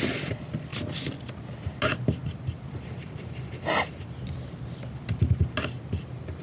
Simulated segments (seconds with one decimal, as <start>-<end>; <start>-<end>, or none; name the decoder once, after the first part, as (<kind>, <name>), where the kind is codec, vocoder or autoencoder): none